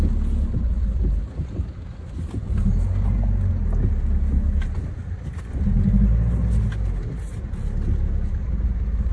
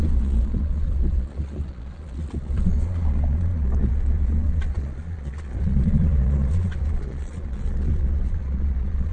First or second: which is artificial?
second